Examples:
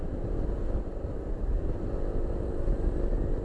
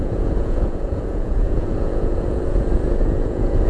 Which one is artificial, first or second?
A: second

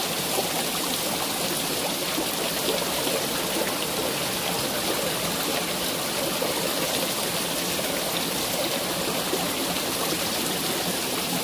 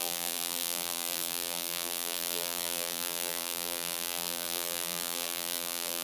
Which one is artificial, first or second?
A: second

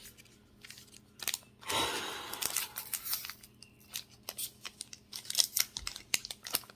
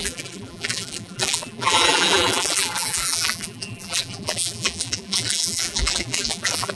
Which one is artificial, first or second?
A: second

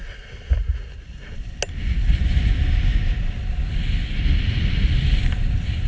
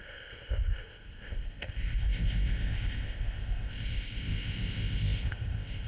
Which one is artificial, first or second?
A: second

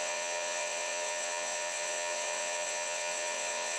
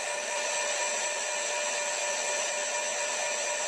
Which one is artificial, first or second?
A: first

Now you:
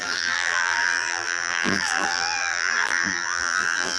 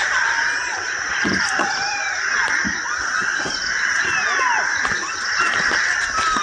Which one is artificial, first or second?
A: first